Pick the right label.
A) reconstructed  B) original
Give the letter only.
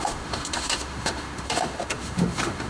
A